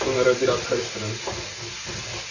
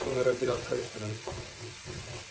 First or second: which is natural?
first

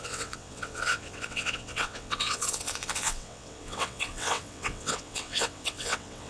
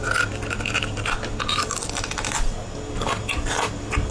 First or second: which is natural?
second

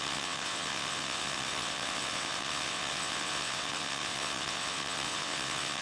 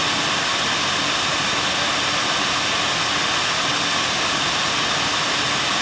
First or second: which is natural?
second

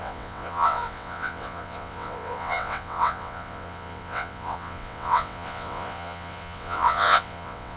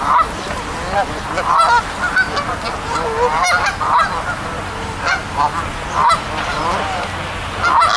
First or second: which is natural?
second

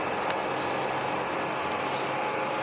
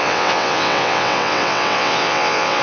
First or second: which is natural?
first